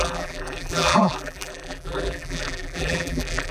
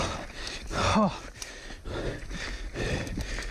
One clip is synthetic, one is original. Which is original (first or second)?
second